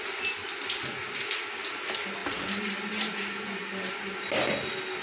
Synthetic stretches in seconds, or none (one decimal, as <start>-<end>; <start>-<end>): none